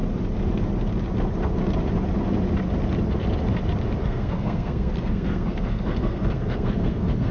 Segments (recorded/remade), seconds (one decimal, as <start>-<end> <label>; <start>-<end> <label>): 0.0-4.0 recorded; 4.0-7.3 remade

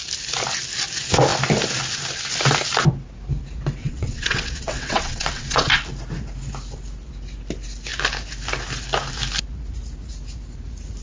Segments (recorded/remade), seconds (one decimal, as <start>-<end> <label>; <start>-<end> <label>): 0.0-3.8 recorded; 3.8-5.8 remade; 5.8-11.0 recorded

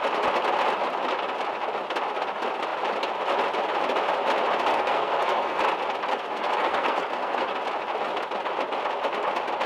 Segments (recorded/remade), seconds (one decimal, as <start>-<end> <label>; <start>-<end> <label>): 0.0-4.7 recorded; 4.7-5.6 remade; 5.6-6.1 recorded; 6.1-7.5 remade; 7.5-9.7 recorded

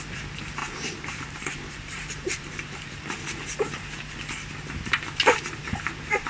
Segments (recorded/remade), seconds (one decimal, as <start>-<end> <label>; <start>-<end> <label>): 0.0-0.6 recorded; 0.6-3.2 remade; 3.2-5.6 recorded; 5.6-6.3 remade

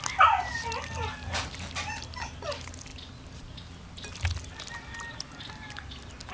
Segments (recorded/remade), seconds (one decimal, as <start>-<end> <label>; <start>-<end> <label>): 0.0-6.3 recorded

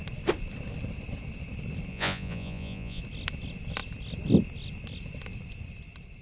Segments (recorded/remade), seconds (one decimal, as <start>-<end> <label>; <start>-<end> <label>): 0.0-1.9 recorded; 1.9-3.0 remade; 3.0-6.2 recorded